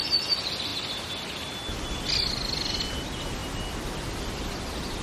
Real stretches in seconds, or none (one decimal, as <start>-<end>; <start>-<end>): 0.0-5.0